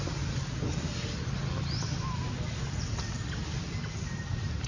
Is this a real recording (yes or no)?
yes